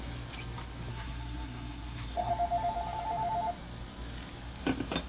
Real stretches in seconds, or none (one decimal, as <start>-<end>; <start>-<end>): 0.0-0.9; 2.3-5.1